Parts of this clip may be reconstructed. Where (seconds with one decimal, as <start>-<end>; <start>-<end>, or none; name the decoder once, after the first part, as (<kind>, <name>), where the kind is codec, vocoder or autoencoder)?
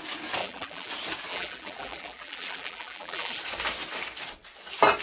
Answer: 0.4-0.9 (vocoder, BigVGAN v2); 1.3-3.4